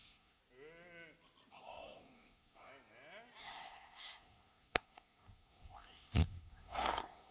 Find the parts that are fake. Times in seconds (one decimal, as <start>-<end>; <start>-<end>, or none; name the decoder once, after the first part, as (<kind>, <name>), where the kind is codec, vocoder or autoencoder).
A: 0.0-0.4 (codec, SNAC); 1.5-2.7; 3.4-7.3